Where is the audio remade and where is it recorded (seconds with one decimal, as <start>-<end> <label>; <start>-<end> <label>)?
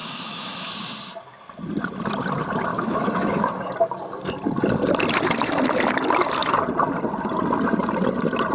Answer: 0.0-0.7 remade; 0.7-2.7 recorded; 2.7-3.5 remade; 3.5-8.5 recorded